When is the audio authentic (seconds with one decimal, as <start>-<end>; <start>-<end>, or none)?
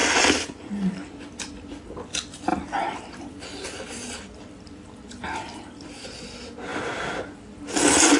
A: 1.1-2.5; 6.2-6.7; 7.6-8.2